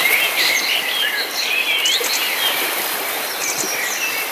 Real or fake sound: fake